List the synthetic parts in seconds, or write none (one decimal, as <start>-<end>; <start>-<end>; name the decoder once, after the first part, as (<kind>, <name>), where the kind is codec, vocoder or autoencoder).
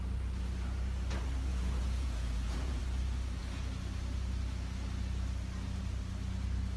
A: 1.5-2.8 (vocoder, Vocos)